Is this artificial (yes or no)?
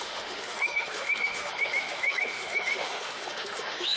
yes